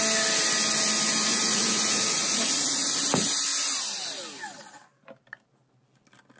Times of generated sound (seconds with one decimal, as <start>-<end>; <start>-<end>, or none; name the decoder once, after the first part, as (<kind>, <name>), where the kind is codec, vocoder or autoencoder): 1.3-3.0 (vocoder, Vocos)